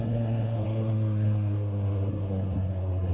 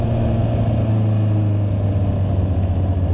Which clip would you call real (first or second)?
second